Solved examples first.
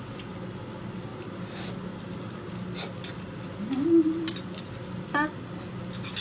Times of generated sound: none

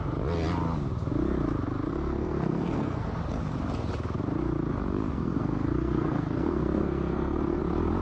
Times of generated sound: 1.9-3.1 (codec, SNAC); 5.1-7.6

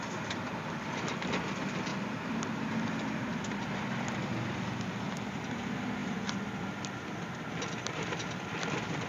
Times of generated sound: 6.0-8.7 (vocoder, BigVGAN v2)

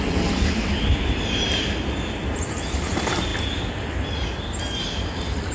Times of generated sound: none

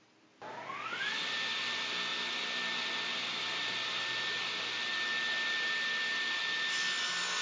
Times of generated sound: none